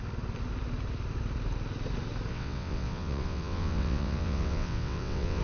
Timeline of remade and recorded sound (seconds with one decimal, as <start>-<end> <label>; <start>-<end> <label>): 0.0-2.3 recorded; 2.3-5.4 remade